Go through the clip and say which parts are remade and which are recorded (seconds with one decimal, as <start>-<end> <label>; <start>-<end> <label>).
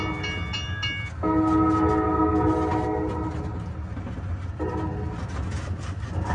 0.0-6.3 recorded